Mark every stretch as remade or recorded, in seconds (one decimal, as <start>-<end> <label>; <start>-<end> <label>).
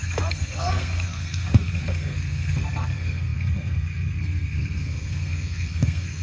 0.0-6.2 remade